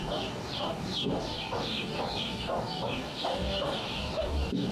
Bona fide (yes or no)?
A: no